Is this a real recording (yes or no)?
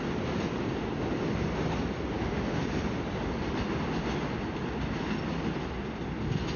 yes